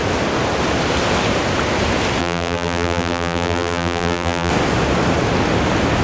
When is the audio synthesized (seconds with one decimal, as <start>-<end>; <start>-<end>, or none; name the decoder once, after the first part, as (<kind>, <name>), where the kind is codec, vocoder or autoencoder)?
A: 2.2-4.5 (vocoder, BigVGAN v2)